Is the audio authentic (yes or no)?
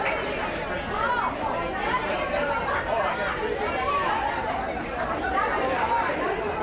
yes